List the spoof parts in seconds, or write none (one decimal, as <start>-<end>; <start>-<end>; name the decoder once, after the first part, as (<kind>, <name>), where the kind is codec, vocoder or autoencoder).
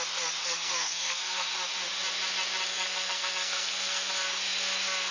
0.4-1.5 (codec, SNAC); 2.7-4.1